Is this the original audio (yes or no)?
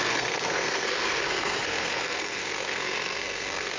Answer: no